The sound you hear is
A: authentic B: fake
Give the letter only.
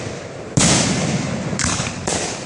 A